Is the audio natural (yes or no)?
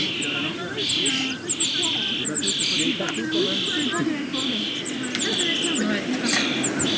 yes